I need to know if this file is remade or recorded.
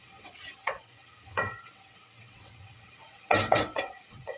remade